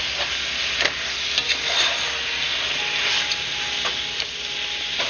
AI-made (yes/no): no